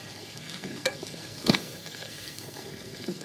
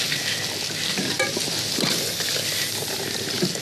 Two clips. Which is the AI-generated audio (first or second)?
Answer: first